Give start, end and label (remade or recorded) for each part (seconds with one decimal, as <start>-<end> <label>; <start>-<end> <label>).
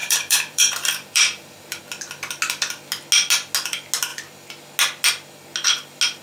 0.0-1.8 remade; 1.8-6.2 recorded